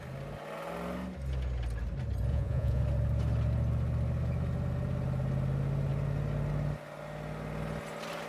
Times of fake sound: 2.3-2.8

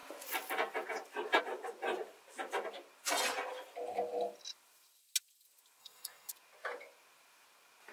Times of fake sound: 5.8-6.3

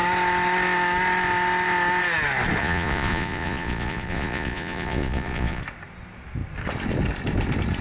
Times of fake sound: 2.6-5.6

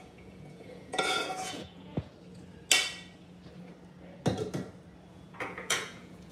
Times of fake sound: 0.0-2.1; 5.1-6.3

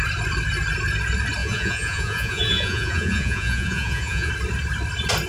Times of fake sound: 1.4-4.3

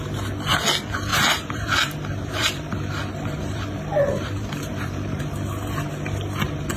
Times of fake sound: 1.1-5.2